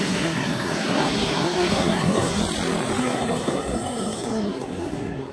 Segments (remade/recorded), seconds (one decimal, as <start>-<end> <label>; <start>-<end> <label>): 0.0-2.4 remade; 2.4-3.0 recorded; 3.0-5.3 remade